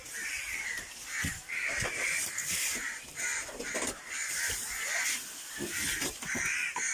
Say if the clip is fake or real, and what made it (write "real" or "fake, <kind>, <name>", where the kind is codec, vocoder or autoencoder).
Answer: fake, vocoder, BigVGAN v2